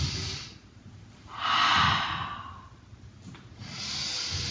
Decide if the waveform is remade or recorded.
recorded